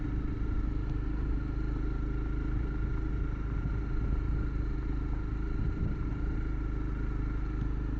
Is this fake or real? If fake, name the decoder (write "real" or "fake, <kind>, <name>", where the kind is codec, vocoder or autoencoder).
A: real